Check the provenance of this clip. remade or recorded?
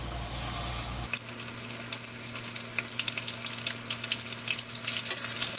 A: recorded